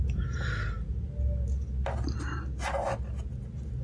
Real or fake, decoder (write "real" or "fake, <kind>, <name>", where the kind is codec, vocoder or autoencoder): real